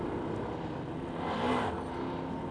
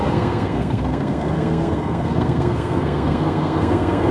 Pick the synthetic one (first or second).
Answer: second